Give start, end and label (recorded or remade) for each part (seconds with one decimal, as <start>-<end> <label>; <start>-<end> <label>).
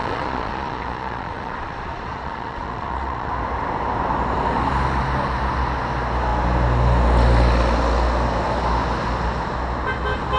0.0-3.3 remade; 3.3-10.4 recorded